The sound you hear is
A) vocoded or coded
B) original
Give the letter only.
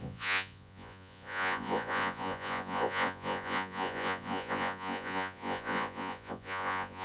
A